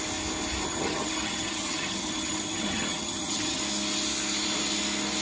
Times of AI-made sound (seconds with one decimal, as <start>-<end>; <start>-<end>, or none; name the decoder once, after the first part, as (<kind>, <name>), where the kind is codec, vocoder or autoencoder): 0.7-3.6 (vocoder, HiFi-GAN)